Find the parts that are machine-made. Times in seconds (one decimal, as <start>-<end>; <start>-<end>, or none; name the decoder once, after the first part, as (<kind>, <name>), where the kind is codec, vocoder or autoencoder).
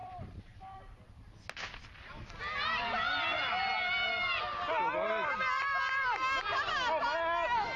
0.0-0.6 (vocoder, BigVGAN v2)